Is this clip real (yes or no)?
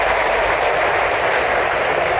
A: no